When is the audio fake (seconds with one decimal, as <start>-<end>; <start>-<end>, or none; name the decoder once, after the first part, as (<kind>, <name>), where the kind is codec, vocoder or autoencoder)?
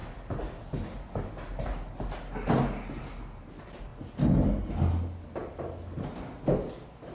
none